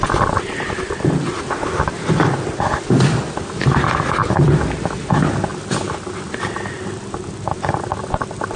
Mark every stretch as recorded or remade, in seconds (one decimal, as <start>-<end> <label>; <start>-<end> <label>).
0.0-8.6 recorded

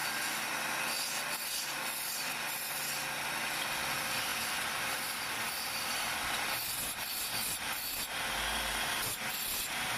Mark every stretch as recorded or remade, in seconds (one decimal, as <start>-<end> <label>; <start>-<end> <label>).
0.0-10.0 recorded

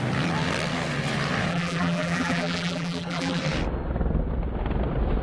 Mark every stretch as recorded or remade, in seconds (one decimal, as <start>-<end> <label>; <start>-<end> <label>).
0.0-1.5 recorded; 1.5-3.4 remade; 3.4-5.2 recorded